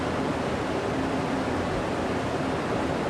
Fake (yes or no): no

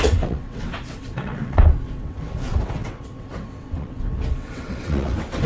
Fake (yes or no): yes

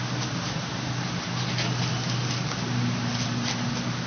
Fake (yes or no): no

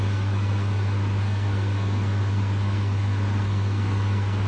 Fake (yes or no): yes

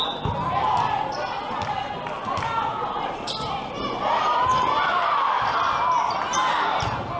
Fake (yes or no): no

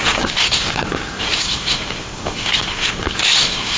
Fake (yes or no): yes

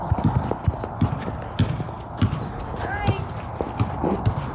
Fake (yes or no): no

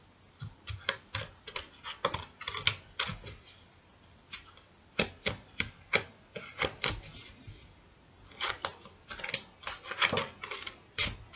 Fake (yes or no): no